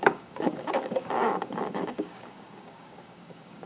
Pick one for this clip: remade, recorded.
remade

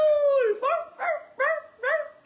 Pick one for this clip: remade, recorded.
recorded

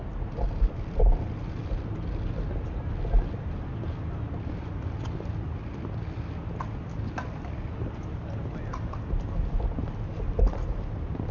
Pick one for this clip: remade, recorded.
recorded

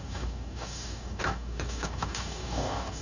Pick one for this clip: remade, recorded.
remade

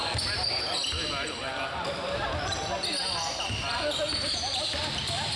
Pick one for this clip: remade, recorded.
recorded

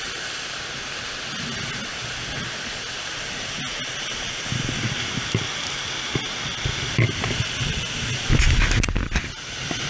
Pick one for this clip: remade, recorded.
recorded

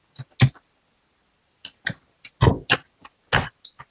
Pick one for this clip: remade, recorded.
recorded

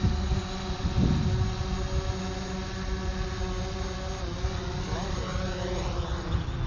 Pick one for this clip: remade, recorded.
recorded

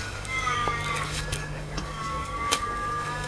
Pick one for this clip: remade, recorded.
remade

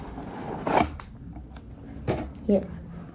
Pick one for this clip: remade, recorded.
recorded